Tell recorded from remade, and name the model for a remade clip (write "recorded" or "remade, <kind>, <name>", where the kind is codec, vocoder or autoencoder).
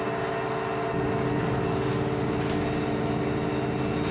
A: recorded